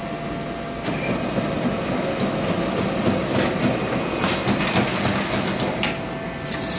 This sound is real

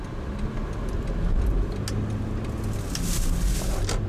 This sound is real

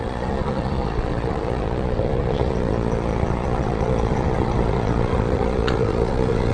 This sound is fake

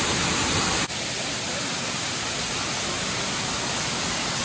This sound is real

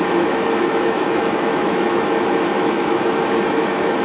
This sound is fake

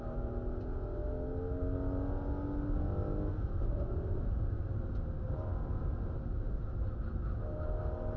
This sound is real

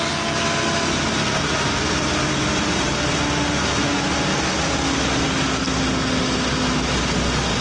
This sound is real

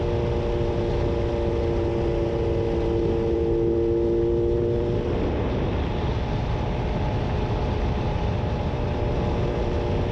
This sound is real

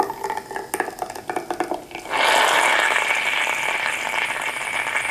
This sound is real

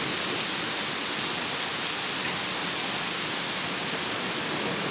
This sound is real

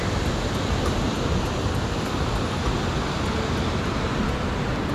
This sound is real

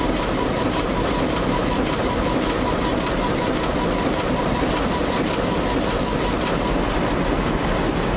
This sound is real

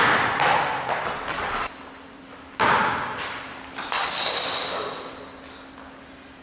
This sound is real